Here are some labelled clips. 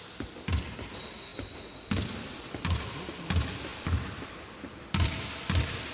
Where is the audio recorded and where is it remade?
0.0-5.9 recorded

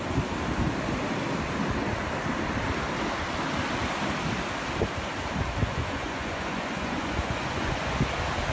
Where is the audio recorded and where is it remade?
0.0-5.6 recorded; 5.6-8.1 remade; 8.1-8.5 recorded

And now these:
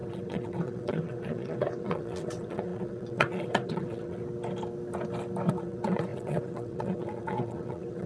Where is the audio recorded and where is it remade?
0.0-4.2 remade; 4.2-5.5 recorded; 5.5-8.1 remade

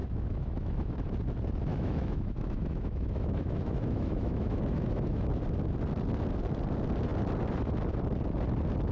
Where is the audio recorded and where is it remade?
0.0-1.2 remade; 1.2-1.7 recorded; 1.7-5.4 remade; 5.4-8.9 recorded

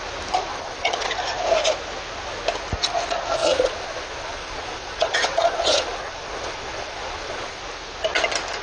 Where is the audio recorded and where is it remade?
0.0-0.5 recorded; 0.5-1.1 remade; 1.1-3.4 recorded; 3.4-7.6 remade; 7.6-8.6 recorded

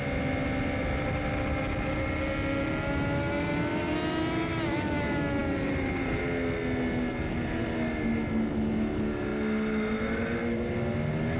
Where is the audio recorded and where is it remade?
0.0-5.4 recorded; 5.4-6.2 remade; 6.2-11.4 recorded

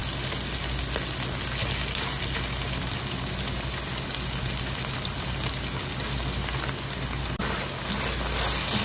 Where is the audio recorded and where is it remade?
0.0-8.8 recorded